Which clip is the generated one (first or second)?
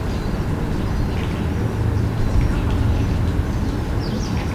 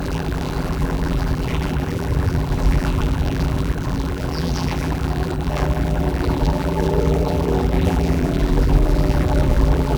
second